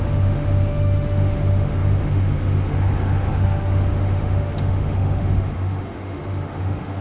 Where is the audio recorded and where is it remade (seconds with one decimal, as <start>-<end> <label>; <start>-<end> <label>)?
0.0-7.0 remade